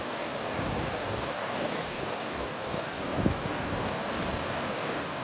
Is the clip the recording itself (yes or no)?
no